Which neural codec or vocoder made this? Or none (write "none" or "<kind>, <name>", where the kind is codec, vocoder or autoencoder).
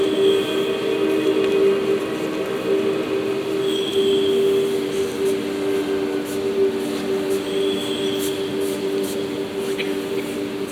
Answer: none